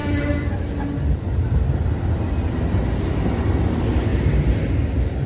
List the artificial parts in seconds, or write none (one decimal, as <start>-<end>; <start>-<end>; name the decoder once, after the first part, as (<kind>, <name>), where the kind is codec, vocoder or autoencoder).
none